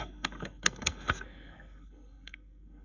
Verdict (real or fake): fake